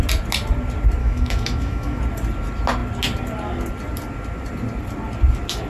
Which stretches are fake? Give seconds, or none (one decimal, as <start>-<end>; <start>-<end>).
1.0-2.0